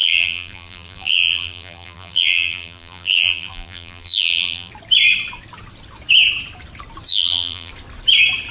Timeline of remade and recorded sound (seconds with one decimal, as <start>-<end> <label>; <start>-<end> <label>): 0.0-4.7 remade; 4.7-7.1 recorded; 7.1-7.7 remade; 7.7-8.5 recorded